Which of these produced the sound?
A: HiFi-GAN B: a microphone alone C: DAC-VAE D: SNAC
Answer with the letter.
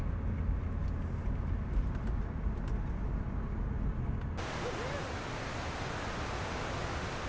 B